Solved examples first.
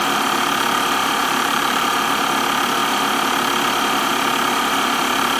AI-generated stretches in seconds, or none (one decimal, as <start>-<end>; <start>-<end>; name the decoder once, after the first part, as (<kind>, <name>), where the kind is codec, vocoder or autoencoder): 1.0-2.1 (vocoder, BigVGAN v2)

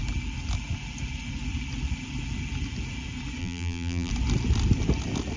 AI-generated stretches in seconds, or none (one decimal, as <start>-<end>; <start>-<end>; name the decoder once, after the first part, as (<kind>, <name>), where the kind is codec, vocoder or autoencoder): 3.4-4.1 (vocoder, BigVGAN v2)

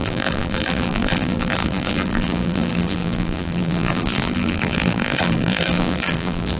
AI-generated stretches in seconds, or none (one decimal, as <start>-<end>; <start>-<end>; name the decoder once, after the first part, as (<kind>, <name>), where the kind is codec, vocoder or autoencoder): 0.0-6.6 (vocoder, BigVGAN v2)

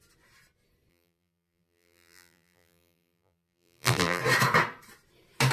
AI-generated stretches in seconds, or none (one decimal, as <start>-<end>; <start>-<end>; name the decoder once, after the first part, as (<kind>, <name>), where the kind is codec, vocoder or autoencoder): 0.9-4.2 (vocoder, BigVGAN v2)